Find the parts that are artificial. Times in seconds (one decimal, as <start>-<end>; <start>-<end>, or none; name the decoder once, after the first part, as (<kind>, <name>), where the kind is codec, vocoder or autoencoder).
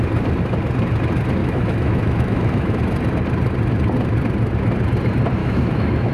1.4-2.8 (autoencoder, DAC-VAE); 5.4-6.1